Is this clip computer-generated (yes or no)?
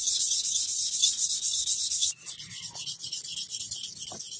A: no